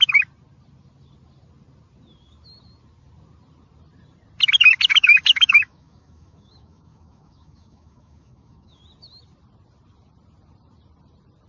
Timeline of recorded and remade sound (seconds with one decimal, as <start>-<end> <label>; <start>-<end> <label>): 0.0-4.9 recorded; 4.9-8.8 remade; 8.8-11.5 recorded